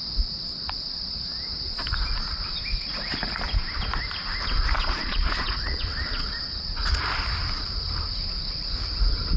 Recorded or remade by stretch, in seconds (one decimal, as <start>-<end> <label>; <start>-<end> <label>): 0.0-4.8 recorded; 4.8-7.0 remade; 7.0-9.4 recorded